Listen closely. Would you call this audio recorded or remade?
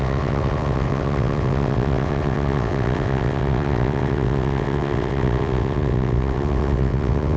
remade